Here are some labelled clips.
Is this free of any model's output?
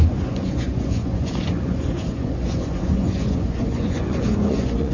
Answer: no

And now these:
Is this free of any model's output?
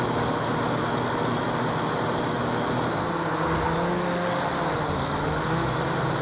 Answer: yes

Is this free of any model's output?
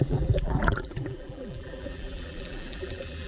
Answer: no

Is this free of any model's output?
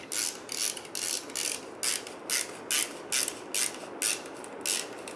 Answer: yes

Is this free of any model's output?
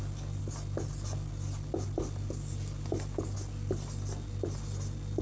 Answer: yes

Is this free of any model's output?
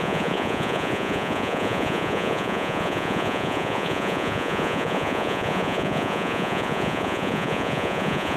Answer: no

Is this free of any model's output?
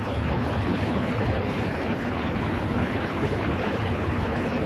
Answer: no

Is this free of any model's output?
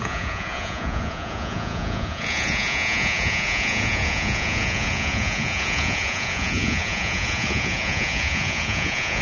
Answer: no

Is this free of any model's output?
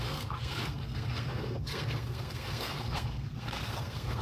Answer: no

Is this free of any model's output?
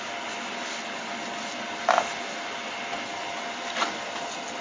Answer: yes